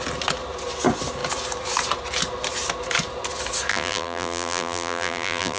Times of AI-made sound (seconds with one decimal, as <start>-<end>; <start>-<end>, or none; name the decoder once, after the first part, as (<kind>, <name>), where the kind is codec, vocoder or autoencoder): 3.7-5.6 (vocoder, BigVGAN v2)